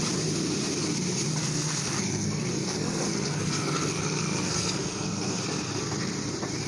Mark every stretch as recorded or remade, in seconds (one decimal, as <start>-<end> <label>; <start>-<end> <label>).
0.0-1.4 recorded; 1.4-5.4 remade; 5.4-6.7 recorded